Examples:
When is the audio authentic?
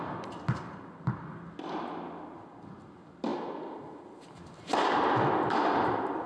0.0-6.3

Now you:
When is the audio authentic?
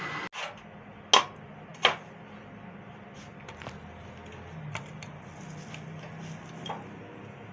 0.0-7.5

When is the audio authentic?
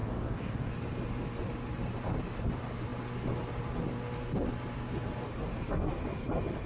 0.7-6.7